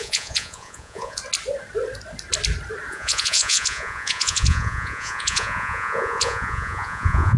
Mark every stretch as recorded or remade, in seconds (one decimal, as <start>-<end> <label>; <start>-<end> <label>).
0.0-1.2 remade; 1.2-2.9 recorded; 2.9-7.4 remade